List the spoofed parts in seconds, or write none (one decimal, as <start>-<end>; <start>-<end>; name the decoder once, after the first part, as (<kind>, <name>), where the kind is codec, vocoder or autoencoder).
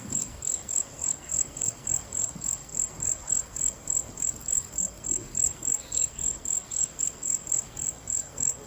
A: 0.0-8.7 (codec, SNAC)